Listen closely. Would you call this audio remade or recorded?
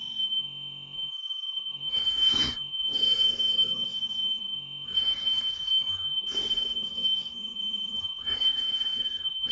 remade